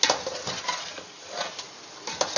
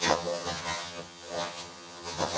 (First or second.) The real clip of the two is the first